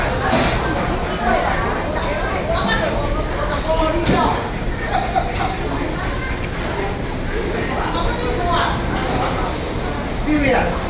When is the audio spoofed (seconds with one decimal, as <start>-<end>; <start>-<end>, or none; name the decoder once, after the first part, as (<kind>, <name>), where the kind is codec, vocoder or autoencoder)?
none